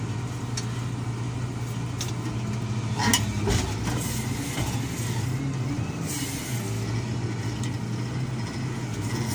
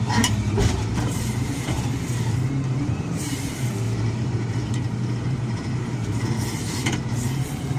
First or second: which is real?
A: first